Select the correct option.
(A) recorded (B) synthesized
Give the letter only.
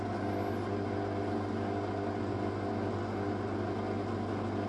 A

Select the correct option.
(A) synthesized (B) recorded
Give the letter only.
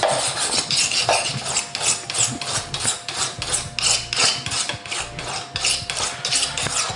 B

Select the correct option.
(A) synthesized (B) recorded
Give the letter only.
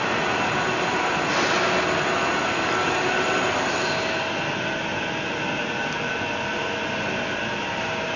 B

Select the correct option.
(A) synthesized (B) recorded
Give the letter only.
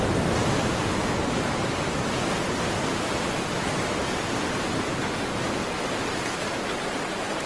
B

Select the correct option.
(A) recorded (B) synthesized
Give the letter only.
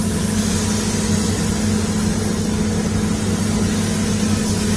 A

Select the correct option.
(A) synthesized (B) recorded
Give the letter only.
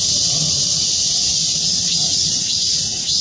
A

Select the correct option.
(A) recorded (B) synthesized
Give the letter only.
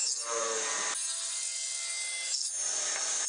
A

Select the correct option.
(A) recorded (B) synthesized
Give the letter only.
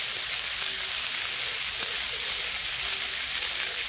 A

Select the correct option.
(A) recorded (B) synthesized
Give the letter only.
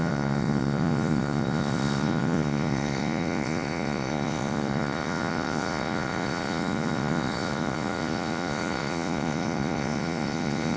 B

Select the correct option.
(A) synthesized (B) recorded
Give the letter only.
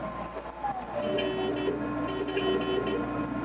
B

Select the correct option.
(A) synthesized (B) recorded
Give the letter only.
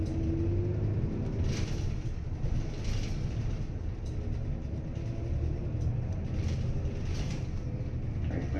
B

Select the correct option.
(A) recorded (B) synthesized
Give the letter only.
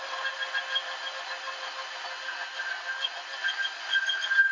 A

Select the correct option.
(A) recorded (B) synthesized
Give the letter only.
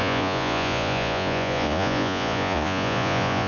B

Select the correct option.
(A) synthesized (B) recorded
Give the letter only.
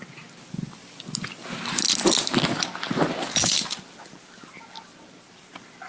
B